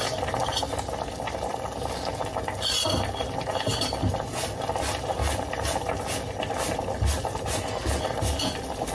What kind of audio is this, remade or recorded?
recorded